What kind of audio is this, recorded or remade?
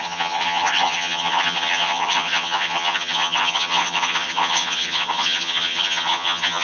remade